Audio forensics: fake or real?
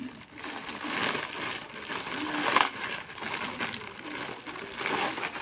real